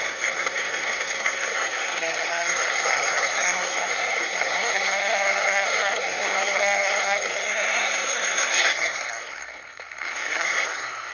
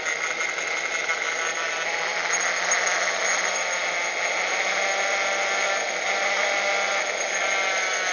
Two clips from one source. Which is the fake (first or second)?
first